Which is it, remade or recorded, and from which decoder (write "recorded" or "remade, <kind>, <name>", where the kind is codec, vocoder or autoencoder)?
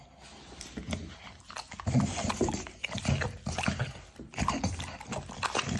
recorded